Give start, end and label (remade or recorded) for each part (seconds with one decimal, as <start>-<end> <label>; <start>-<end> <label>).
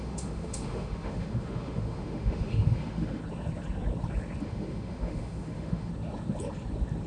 0.0-3.2 remade; 3.2-4.4 recorded; 4.4-5.9 remade; 5.9-7.1 recorded